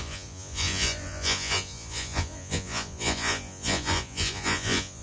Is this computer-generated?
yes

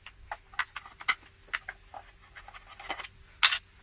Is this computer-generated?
no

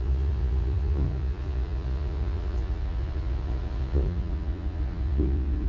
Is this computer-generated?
yes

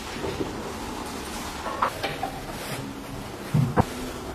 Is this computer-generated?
no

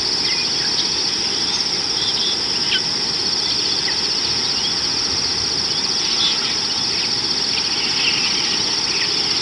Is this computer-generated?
no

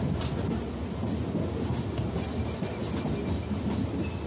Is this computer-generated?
no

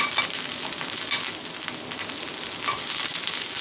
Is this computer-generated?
no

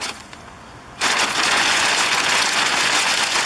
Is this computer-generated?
yes